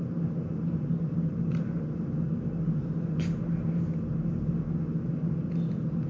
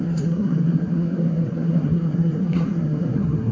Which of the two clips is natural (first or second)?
first